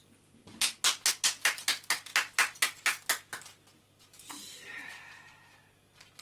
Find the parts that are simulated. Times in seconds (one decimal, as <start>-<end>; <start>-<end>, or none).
none